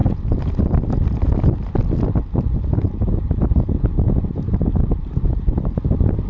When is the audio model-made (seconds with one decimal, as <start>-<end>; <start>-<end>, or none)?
none